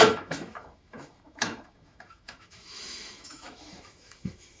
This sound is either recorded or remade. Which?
remade